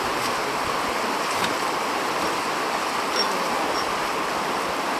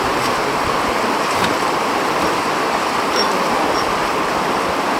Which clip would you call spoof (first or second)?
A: second